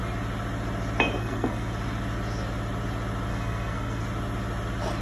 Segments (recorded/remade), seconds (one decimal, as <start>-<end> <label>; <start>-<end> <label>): 0.0-1.2 recorded; 1.2-1.7 remade; 1.7-3.3 recorded; 3.3-4.0 remade; 4.0-5.0 recorded